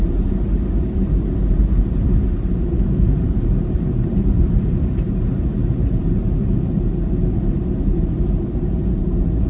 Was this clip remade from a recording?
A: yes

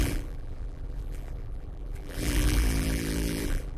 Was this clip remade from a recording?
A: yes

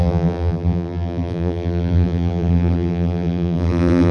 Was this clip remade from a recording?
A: yes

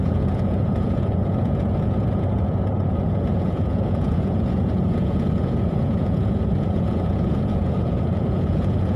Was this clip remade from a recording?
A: yes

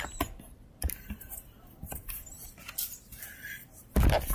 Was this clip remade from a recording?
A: yes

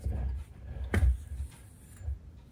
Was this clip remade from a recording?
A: no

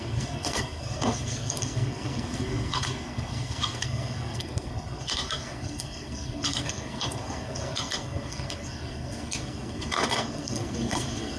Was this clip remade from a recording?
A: yes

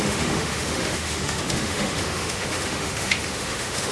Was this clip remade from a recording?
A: yes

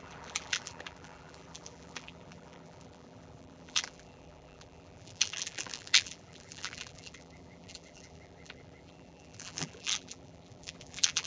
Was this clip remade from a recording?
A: yes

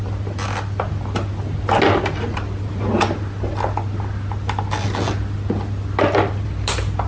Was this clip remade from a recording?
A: no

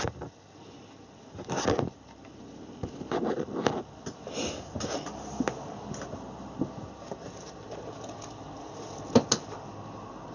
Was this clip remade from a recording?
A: no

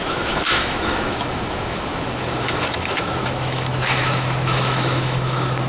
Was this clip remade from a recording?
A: yes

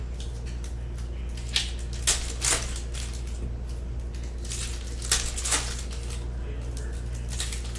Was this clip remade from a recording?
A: no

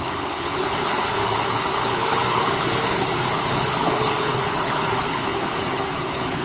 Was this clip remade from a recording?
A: yes